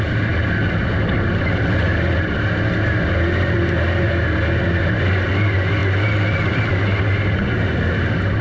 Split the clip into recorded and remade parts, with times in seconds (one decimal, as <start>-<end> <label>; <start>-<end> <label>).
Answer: 0.0-8.4 recorded